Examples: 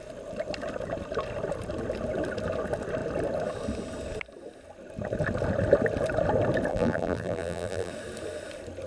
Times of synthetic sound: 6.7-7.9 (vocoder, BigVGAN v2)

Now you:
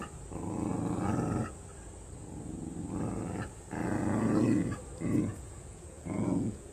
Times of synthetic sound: 5.3-6.7 (vocoder, Vocos)